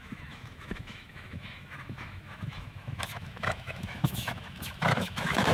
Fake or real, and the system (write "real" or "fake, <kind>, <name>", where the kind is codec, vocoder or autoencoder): fake, autoencoder, DAC-VAE